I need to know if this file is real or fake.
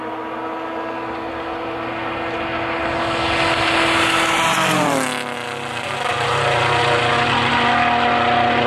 real